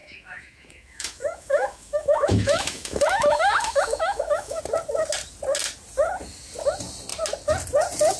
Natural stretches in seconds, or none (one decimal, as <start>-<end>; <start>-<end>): 4.6-8.2